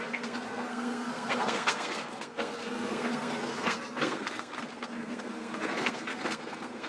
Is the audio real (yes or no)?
no